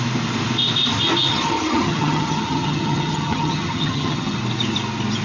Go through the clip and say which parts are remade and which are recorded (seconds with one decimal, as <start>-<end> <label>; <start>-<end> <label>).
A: 0.0-1.3 recorded; 1.3-4.4 remade; 4.4-5.2 recorded